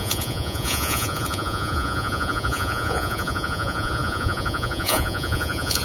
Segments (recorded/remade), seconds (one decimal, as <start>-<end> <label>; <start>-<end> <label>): 0.0-5.8 remade